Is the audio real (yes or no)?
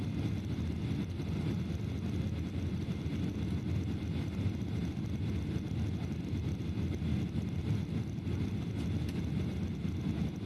yes